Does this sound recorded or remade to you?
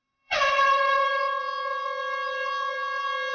remade